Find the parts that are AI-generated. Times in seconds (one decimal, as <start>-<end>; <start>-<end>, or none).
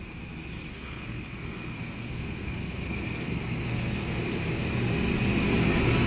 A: 0.7-4.2